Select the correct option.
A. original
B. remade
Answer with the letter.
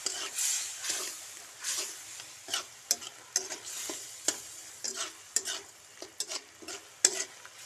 A